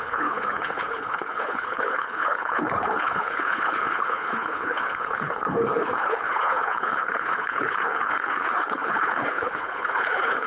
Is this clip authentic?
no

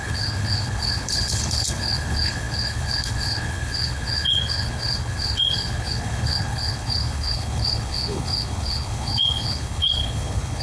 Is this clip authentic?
no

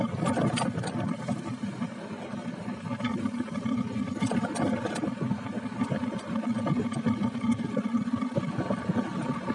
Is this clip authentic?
yes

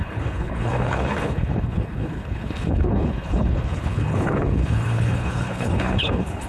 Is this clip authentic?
no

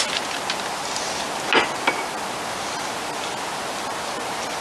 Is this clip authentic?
yes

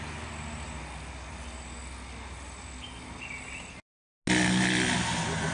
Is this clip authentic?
yes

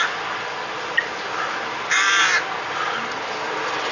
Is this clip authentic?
yes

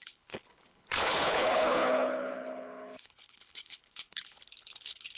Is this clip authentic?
no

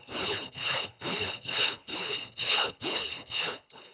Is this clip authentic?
no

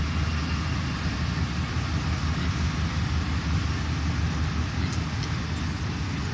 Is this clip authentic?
yes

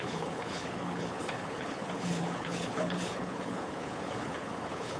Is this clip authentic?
no